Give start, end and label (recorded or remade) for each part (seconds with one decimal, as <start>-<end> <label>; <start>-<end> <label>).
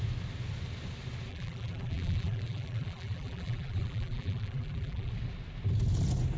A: 0.0-1.3 recorded; 1.3-5.1 remade; 5.1-6.4 recorded